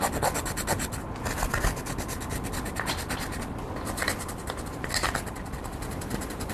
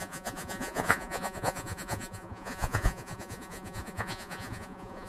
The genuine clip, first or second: first